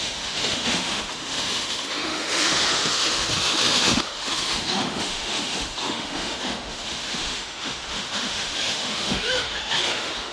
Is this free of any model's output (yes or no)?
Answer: no